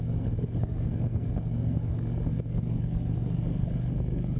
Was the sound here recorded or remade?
remade